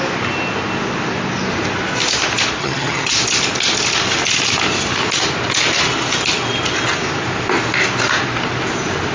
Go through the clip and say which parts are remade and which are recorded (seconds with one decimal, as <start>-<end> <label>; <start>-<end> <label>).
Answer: 0.0-2.6 recorded; 2.6-3.1 remade; 3.1-9.1 recorded